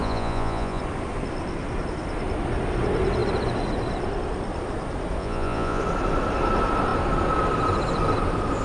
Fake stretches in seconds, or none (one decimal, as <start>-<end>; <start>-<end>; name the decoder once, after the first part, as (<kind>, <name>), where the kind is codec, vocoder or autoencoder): 0.0-0.8 (vocoder, Vocos); 5.2-5.8